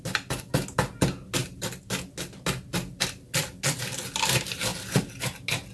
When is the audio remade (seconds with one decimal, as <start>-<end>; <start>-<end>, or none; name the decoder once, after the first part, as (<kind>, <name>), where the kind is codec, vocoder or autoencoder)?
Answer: none